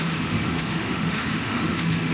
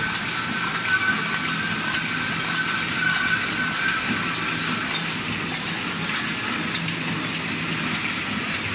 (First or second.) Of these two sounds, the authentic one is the second